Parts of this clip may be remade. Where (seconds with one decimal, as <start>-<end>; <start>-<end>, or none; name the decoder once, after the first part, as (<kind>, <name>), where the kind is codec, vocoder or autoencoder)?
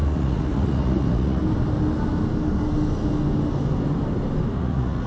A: 0.0-1.4 (vocoder, Vocos); 4.5-5.1